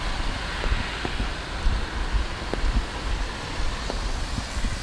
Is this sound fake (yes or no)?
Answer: no